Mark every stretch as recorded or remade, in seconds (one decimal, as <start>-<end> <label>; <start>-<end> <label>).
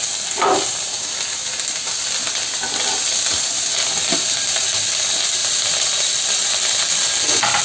0.0-1.4 remade; 1.4-3.3 recorded; 3.3-5.4 remade; 5.4-6.6 recorded; 6.6-7.6 remade